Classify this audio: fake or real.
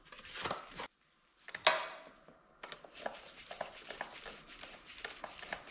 real